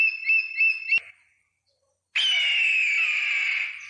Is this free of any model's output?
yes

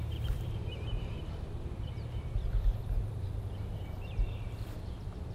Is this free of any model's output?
no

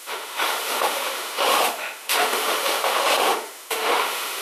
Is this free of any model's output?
no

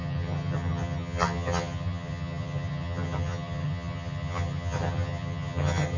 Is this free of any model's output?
no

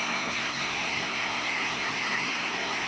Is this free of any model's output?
no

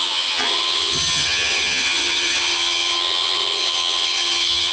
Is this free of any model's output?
no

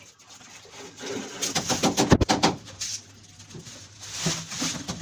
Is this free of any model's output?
yes